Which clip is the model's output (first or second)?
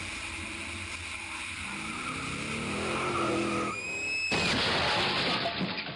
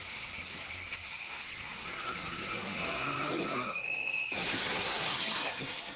second